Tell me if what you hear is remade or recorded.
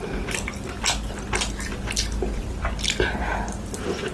recorded